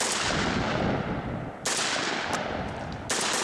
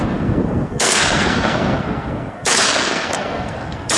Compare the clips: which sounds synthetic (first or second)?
second